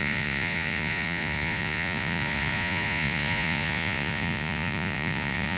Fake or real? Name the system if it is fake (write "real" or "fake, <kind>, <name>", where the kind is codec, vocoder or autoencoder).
fake, vocoder, Vocos